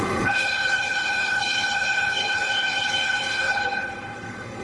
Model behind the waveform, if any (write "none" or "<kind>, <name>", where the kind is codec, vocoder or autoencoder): codec, HILCodec